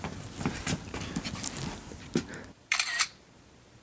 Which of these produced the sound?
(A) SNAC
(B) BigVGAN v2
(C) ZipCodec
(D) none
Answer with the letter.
D